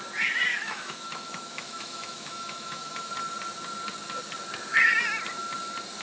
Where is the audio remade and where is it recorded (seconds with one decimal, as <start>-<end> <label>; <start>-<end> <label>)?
0.0-0.5 recorded; 0.5-3.1 remade; 3.1-6.0 recorded